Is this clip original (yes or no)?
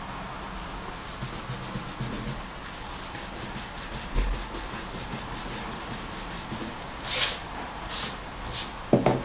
yes